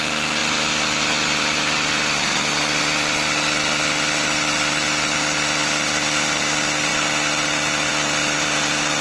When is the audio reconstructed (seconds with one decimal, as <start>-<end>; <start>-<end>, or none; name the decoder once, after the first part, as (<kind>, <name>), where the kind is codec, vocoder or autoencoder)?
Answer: none